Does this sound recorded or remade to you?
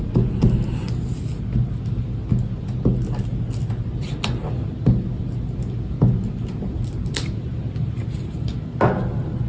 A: recorded